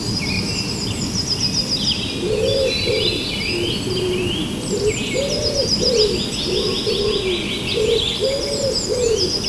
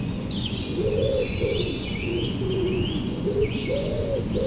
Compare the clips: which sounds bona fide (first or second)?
first